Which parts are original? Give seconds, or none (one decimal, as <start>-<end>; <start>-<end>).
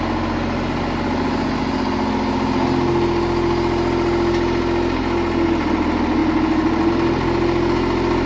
0.0-8.3